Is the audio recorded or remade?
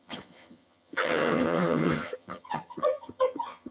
remade